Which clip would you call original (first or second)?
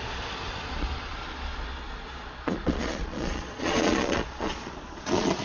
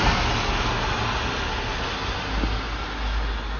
second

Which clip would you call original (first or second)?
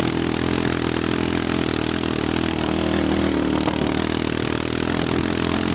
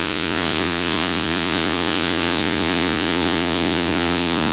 first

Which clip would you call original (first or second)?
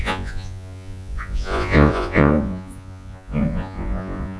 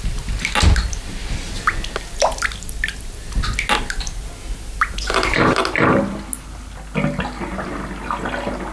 second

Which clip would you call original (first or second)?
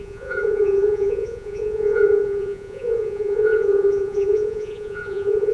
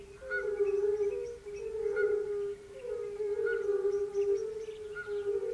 second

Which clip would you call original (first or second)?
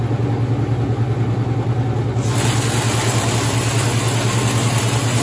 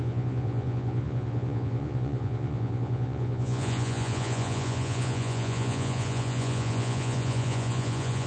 first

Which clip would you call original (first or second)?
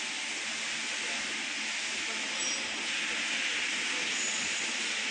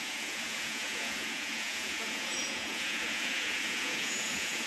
first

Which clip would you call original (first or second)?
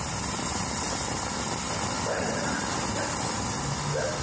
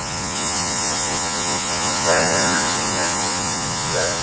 first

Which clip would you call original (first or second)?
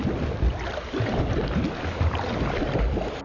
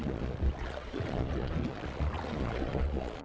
first